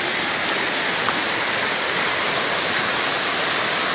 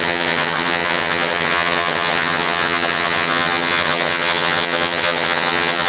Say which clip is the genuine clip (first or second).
first